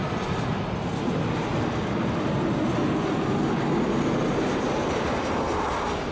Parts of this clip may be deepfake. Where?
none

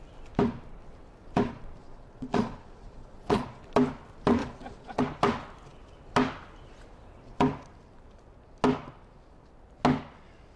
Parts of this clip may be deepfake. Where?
1.8-3.6 (vocoder, Vocos); 4.4-5.0

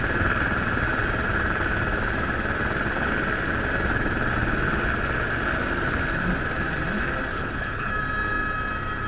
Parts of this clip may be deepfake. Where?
7.3-7.9 (codec, HILCodec)

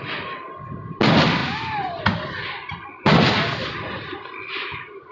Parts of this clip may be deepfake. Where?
1.4-2.0 (vocoder, BigVGAN v2); 4.1-5.1

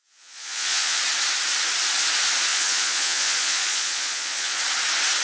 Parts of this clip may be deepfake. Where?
0.0-1.0 (vocoder, Vocos); 2.5-4.6